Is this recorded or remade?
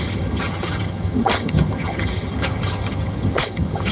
remade